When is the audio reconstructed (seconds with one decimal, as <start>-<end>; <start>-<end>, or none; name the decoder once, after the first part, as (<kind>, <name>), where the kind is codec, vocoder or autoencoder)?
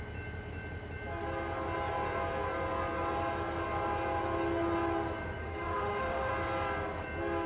5.4-6.3 (autoencoder, DAC-VAE)